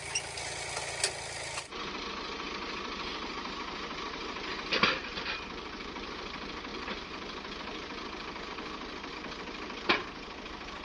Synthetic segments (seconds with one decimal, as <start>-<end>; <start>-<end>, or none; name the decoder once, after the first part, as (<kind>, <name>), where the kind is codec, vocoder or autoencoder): none

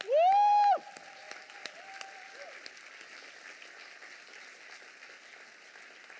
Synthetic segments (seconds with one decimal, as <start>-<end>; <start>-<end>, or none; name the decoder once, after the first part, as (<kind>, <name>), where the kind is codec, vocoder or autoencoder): none

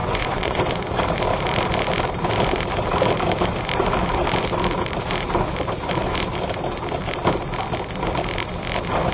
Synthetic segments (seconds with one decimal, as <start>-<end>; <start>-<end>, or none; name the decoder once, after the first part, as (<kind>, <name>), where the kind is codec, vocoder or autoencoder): 0.0-0.6 (vocoder, Vocos)

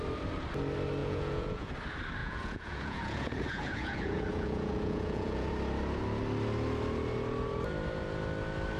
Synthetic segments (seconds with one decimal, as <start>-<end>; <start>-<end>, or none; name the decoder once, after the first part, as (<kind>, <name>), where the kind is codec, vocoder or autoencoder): 1.0-1.7 (vocoder, Vocos); 2.2-5.5

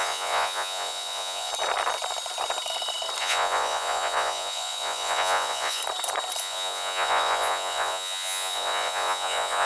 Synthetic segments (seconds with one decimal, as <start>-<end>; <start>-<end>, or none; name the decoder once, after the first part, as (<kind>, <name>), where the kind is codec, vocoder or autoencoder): 0.0-1.5 (vocoder, Vocos); 3.2-5.8; 6.4-9.7